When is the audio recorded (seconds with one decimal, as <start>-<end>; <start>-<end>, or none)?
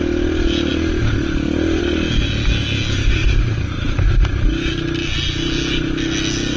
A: 0.0-3.2; 4.7-6.6